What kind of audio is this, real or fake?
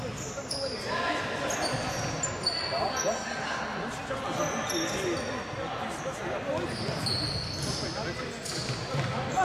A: real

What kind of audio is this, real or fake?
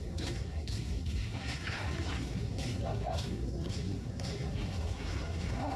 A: fake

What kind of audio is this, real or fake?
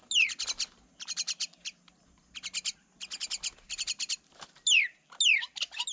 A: real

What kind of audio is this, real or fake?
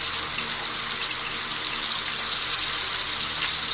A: real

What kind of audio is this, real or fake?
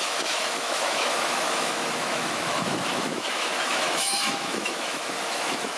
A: fake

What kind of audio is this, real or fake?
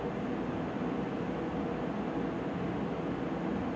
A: real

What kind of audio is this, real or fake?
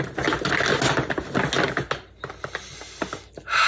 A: real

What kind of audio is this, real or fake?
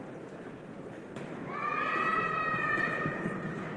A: fake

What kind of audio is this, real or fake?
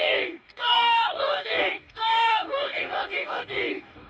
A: fake